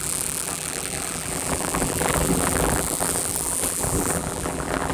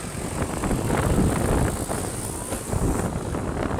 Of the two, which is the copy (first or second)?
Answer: first